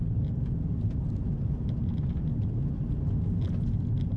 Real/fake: real